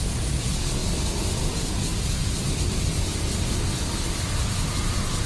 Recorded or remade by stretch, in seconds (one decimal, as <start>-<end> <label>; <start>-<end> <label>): 0.0-0.8 remade; 0.8-1.3 recorded; 1.3-2.2 remade; 2.2-2.9 recorded; 2.9-3.3 remade; 3.3-4.8 recorded; 4.8-5.3 remade